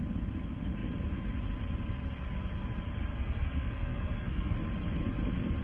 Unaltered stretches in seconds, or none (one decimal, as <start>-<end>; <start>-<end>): 0.0-3.1; 4.6-5.6